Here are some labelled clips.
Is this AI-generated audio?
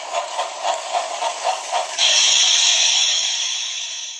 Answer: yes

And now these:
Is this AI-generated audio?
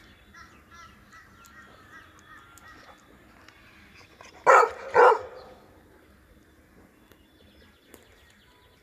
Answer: no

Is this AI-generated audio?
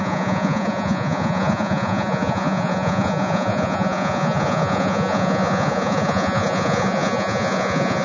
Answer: yes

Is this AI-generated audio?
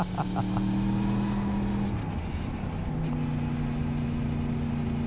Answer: no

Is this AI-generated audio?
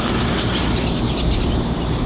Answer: no